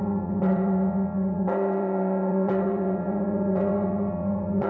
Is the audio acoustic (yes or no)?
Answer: no